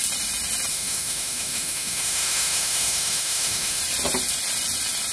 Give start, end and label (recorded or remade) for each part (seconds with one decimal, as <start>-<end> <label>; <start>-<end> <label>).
0.0-0.7 recorded; 0.7-3.8 remade; 3.8-5.1 recorded